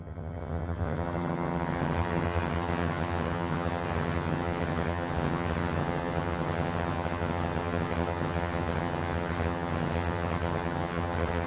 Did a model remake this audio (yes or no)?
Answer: yes